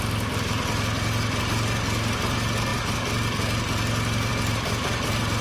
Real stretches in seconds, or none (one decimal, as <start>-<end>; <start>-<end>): 0.0-5.4